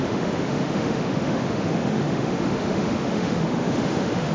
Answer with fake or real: fake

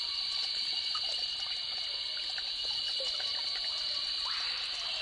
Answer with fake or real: real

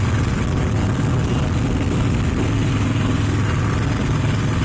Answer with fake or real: real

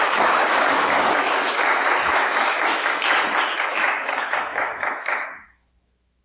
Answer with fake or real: fake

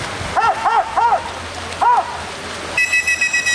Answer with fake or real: real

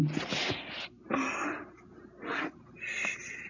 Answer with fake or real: real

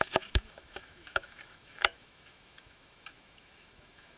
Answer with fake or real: fake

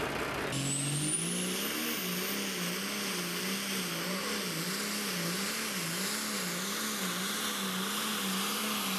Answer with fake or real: real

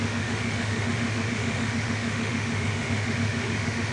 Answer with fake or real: fake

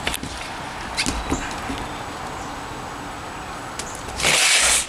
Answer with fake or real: real